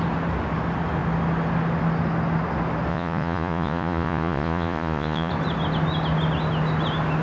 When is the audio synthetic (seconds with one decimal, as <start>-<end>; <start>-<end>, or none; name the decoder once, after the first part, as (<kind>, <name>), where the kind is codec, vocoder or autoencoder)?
2.9-5.3 (vocoder, Vocos)